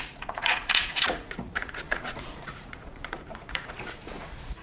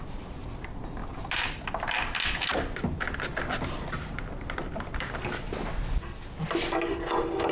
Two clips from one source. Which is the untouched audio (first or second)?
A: second